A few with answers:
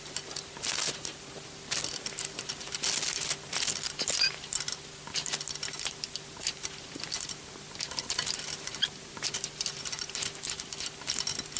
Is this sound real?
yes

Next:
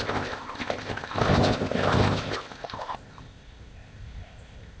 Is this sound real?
no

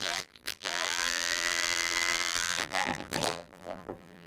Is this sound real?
no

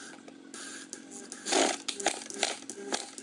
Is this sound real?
yes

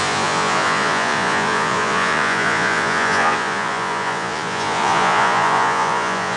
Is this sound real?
no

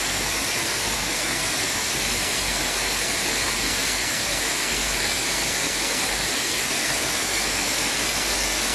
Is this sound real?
no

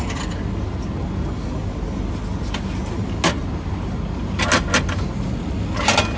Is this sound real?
yes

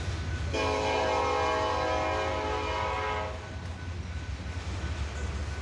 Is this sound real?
yes